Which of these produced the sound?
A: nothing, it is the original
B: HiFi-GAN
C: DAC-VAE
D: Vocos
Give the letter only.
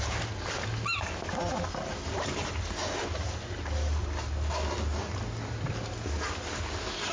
A